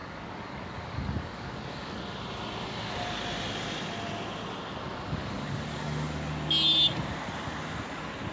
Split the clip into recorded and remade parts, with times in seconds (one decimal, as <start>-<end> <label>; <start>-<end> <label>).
0.0-2.0 remade; 2.0-5.2 recorded; 5.2-6.3 remade; 6.3-8.3 recorded